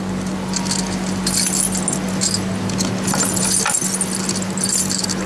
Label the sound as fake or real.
real